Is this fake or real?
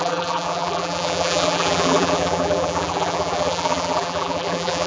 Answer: fake